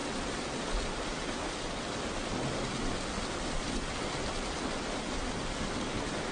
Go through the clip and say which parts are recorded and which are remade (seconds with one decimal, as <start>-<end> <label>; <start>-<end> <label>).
0.0-6.3 recorded

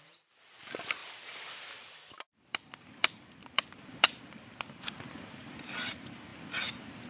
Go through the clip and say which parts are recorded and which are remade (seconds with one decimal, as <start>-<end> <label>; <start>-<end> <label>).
0.0-6.3 remade; 6.3-7.1 recorded

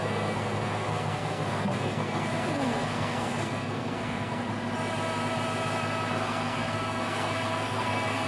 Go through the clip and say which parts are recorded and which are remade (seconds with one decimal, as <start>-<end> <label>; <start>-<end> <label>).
0.0-4.5 remade; 4.5-6.1 recorded; 6.1-8.3 remade